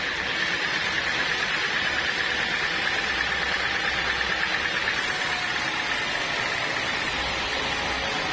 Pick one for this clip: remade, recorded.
recorded